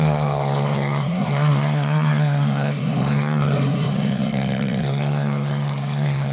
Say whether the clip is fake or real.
fake